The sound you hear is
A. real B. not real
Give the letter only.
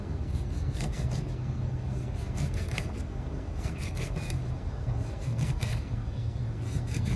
B